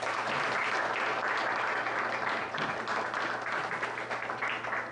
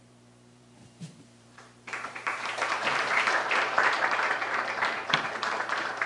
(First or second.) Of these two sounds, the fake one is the second